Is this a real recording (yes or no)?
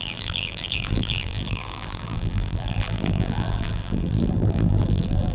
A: no